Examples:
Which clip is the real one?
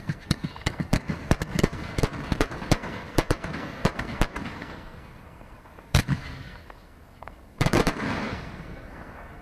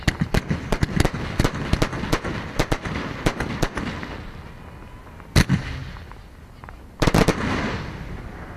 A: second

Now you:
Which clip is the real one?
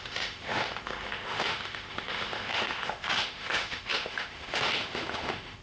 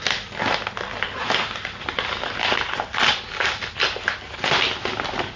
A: second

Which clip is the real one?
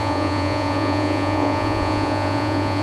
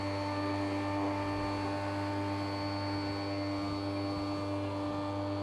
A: second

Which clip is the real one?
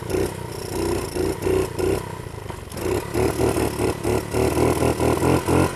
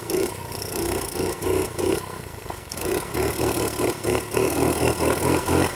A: first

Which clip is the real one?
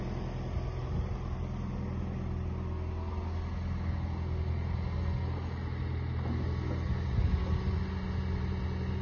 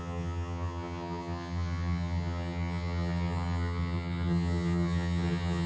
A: first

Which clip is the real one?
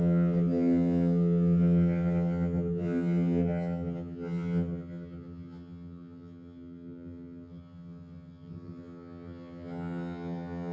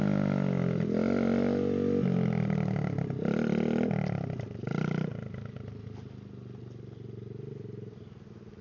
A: second